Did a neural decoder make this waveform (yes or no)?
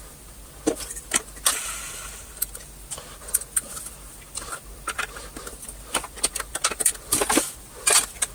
no